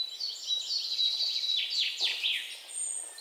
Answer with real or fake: real